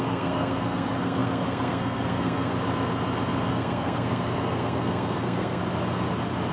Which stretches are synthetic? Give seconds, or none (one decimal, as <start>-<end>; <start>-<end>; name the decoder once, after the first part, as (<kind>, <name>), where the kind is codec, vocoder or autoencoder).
0.0-2.5 (codec, SNAC); 3.5-5.6